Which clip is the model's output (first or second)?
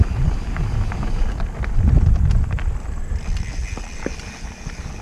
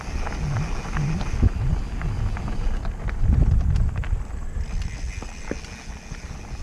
first